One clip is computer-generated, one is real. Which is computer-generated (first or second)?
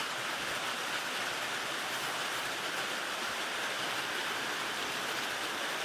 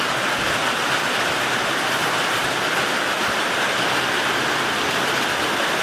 first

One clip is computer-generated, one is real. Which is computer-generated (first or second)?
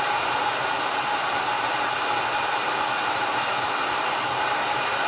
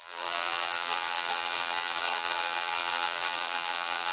second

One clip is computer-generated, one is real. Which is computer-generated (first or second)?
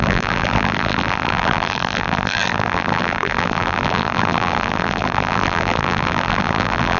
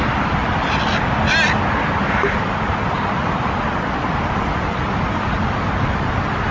first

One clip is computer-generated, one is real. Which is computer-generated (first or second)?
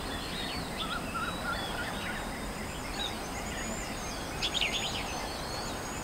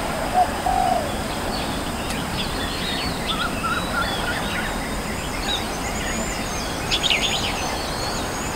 second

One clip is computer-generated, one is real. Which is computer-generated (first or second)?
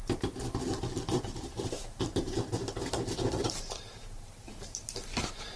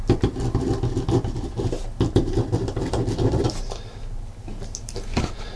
first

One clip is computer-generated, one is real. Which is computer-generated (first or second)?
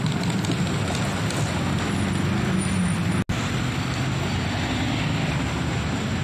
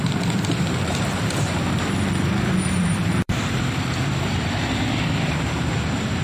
second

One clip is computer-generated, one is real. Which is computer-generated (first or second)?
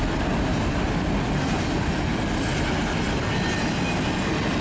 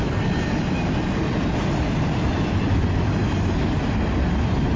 second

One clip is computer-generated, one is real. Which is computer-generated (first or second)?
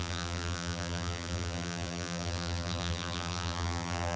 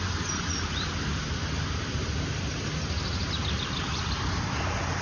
first